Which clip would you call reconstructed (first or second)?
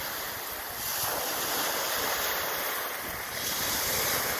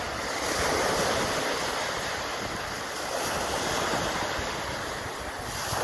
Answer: first